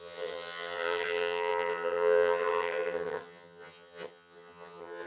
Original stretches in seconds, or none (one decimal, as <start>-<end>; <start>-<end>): none